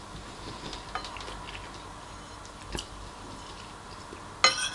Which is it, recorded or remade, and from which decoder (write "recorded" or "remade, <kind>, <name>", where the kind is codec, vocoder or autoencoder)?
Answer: recorded